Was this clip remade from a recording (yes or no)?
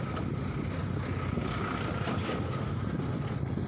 no